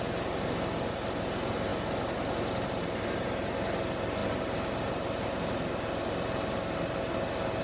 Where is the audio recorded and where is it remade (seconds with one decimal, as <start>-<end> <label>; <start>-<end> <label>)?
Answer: 0.0-7.6 recorded